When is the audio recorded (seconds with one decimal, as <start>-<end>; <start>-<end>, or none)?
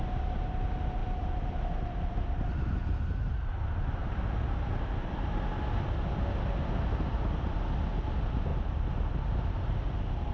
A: 0.0-10.3